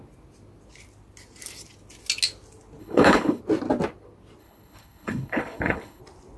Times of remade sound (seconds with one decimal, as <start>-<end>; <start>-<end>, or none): 2.8-3.4; 4.4-6.0